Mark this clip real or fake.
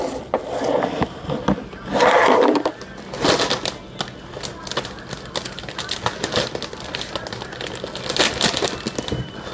real